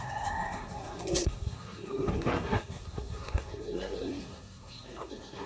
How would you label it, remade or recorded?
remade